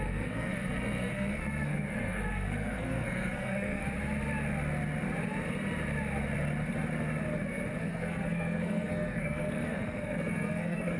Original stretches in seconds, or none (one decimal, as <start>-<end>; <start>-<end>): 3.8-7.8